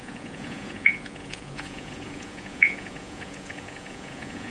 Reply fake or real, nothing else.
fake